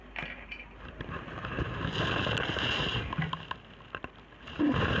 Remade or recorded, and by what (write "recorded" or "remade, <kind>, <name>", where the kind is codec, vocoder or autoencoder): recorded